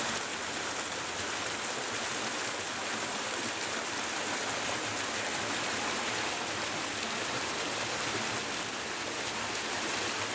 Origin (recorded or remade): recorded